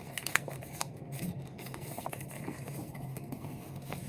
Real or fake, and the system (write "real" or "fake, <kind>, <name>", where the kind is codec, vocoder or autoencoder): fake, codec, SNAC